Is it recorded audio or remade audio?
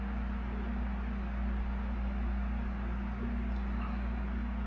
recorded